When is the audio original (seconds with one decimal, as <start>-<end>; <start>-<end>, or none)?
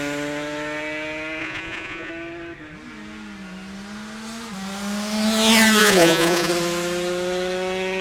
0.0-1.4; 2.1-5.8; 6.5-8.0